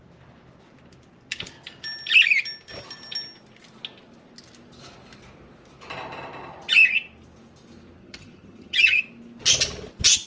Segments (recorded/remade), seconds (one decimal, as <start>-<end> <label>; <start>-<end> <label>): 0.0-8.0 recorded; 8.0-9.0 remade; 9.0-10.3 recorded